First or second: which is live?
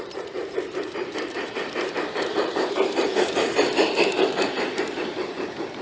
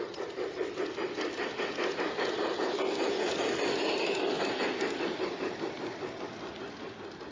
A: second